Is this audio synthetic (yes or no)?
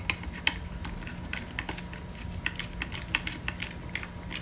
no